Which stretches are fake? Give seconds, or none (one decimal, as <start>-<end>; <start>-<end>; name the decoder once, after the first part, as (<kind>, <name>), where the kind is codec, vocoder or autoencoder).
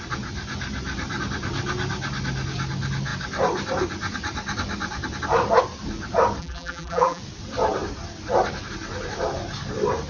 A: 6.4-7.2 (vocoder, BigVGAN v2)